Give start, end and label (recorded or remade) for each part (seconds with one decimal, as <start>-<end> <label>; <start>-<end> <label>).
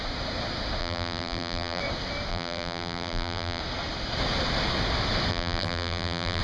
0.0-0.8 recorded; 0.8-1.8 remade; 1.8-2.3 recorded; 2.3-3.6 remade; 3.6-5.3 recorded; 5.3-6.4 remade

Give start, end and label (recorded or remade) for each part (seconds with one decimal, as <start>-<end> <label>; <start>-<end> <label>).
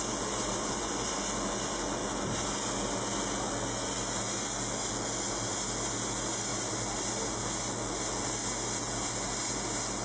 0.0-0.6 recorded; 0.6-1.1 remade; 1.1-10.0 recorded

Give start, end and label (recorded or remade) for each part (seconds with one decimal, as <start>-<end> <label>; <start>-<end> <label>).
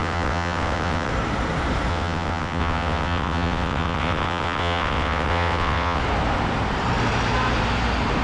0.0-1.1 remade; 1.1-1.9 recorded; 1.9-6.0 remade; 6.0-8.2 recorded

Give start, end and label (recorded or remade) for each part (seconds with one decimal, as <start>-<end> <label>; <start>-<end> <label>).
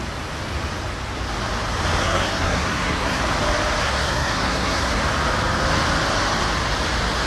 0.0-2.0 recorded; 2.0-3.2 remade; 3.2-3.8 recorded; 3.8-5.0 remade; 5.0-7.3 recorded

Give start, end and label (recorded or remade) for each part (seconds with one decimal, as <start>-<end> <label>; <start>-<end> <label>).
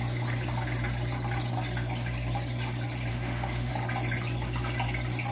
0.0-3.1 recorded; 3.1-3.7 remade; 3.7-5.3 recorded